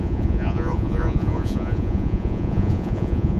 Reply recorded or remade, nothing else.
remade